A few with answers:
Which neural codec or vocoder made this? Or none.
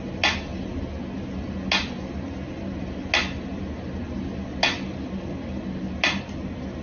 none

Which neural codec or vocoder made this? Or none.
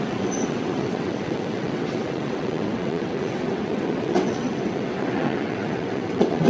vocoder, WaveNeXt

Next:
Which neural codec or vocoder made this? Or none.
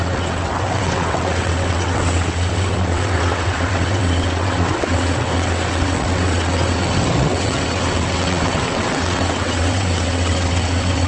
vocoder, WaveNeXt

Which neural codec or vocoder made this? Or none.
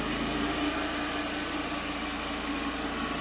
none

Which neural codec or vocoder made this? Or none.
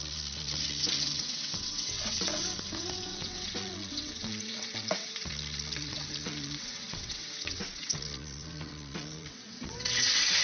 vocoder, WaveNeXt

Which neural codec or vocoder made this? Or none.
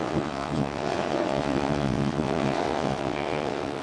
vocoder, WaveNeXt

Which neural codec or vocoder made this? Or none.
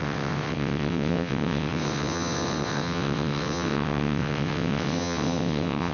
vocoder, WaveNeXt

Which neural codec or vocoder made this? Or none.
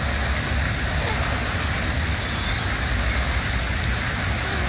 none